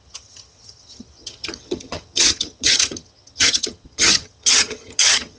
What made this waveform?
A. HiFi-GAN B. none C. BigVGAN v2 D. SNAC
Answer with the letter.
A